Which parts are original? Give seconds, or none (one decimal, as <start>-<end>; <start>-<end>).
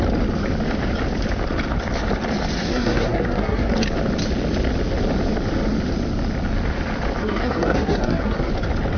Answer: 0.0-2.6; 3.7-7.2; 8.5-9.0